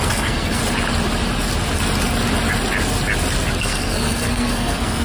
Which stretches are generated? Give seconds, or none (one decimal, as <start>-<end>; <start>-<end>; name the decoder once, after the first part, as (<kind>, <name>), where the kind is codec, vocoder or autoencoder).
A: 0.0-0.6 (codec, SNAC); 3.6-5.0